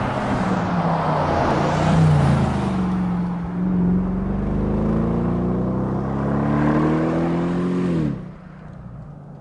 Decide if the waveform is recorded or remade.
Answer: recorded